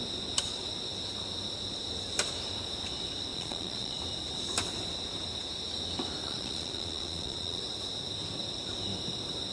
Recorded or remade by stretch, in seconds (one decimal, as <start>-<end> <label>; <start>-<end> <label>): 0.0-3.3 recorded; 3.3-4.0 remade; 4.0-6.2 recorded; 6.2-7.6 remade; 7.6-9.5 recorded